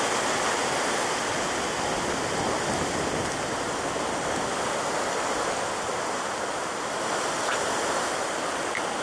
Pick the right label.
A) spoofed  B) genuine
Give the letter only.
B